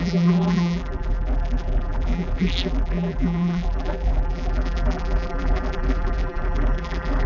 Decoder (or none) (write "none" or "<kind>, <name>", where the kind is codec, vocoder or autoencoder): vocoder, BigVGAN v2